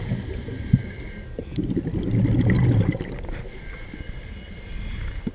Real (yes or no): yes